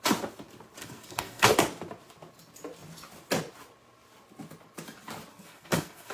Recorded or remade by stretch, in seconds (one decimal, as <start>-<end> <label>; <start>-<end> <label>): 0.0-0.8 recorded; 0.8-1.5 remade; 1.5-5.3 recorded; 5.3-6.1 remade